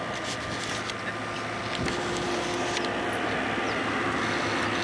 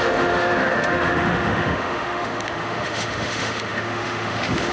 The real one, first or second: first